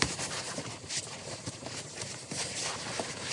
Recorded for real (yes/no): no